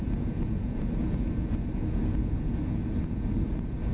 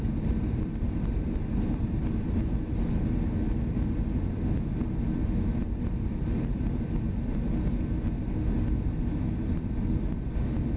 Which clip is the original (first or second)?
second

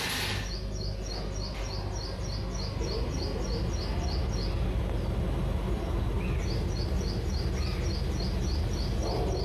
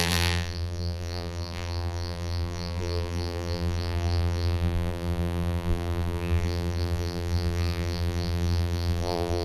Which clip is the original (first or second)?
first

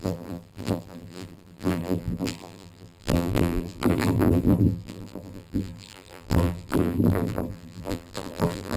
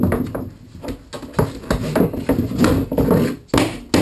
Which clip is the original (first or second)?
second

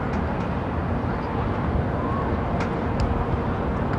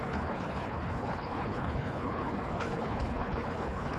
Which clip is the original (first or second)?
first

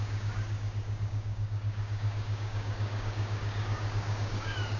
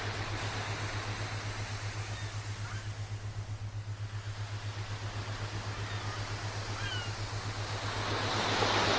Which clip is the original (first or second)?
second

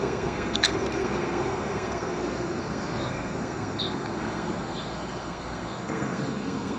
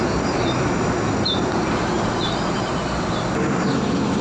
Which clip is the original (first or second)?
second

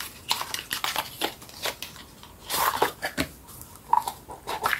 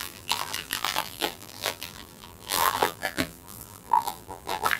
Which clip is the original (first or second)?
first